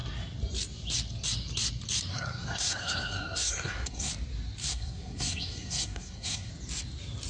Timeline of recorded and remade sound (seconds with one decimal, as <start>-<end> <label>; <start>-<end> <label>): 0.0-2.1 recorded; 2.1-4.1 remade; 4.1-4.6 recorded; 4.6-6.5 remade; 6.5-7.3 recorded